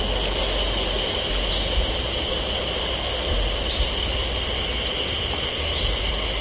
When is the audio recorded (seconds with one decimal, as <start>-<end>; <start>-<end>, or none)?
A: 0.0-6.4